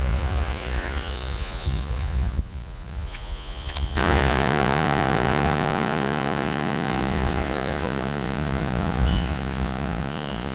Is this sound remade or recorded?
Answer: remade